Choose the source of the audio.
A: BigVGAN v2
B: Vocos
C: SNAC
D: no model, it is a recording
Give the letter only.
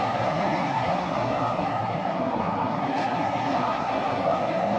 C